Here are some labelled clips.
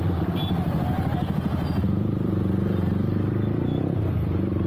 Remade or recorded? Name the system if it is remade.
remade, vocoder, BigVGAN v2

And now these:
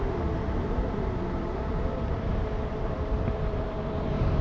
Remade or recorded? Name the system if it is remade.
remade, vocoder, BigVGAN v2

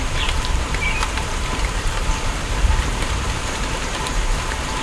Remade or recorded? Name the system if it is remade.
remade, vocoder, BigVGAN v2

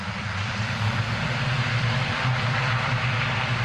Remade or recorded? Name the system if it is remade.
remade, vocoder, BigVGAN v2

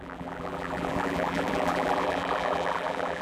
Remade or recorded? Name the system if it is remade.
remade, vocoder, BigVGAN v2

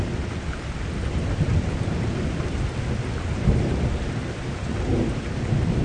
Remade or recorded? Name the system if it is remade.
remade, vocoder, BigVGAN v2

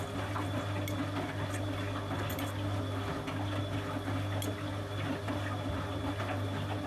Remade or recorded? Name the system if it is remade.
recorded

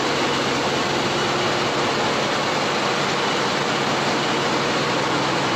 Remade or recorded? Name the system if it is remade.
recorded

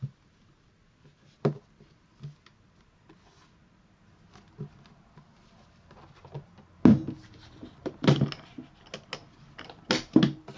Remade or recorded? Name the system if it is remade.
recorded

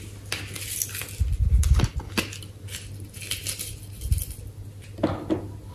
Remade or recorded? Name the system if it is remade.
recorded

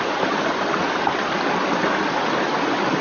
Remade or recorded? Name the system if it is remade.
recorded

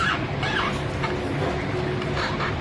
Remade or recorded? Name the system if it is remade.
recorded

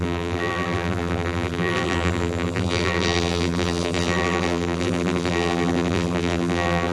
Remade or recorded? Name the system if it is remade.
remade, vocoder, BigVGAN v2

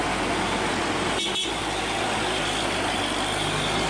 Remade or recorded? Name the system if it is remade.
recorded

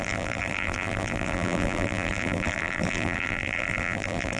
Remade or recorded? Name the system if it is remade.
remade, vocoder, BigVGAN v2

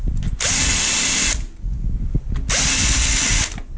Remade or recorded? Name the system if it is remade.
recorded